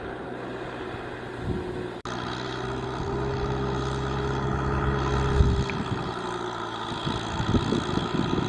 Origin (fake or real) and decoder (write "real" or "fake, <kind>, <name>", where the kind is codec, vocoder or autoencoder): real